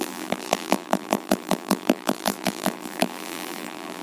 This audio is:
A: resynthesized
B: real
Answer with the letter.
A